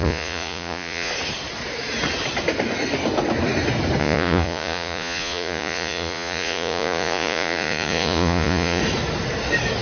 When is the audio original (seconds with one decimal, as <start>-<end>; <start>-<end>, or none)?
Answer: 1.1-4.0; 8.8-9.8